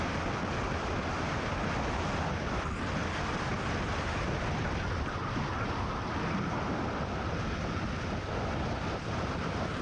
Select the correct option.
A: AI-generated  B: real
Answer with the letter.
B